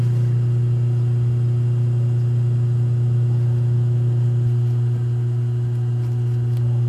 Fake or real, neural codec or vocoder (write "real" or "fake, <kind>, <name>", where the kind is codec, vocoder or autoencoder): real